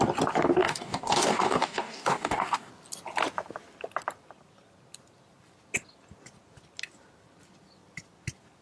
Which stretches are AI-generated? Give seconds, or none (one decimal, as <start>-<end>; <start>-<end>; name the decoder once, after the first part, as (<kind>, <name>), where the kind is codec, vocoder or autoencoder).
0.6-2.7 (codec, DAC)